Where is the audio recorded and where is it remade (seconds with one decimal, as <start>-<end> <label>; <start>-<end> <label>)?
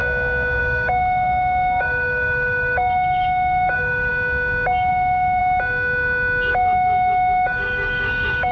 0.0-0.6 recorded; 0.6-4.1 remade; 4.1-4.9 recorded; 4.9-5.4 remade; 5.4-6.5 recorded; 6.5-8.5 remade